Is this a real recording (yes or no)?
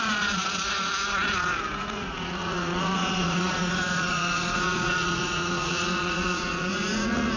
no